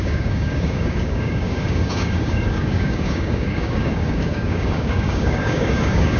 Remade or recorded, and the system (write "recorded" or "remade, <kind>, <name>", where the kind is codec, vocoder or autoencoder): remade, codec, DAC